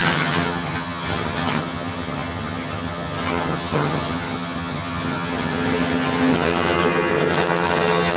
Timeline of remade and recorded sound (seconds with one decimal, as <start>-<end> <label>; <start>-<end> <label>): 0.0-8.2 remade